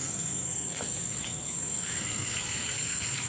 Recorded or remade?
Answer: remade